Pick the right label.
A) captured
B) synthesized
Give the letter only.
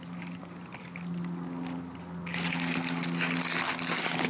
A